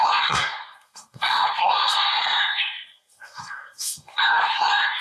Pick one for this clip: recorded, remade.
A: remade